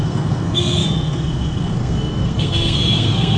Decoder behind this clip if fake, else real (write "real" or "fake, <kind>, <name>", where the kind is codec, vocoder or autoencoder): fake, codec, SNAC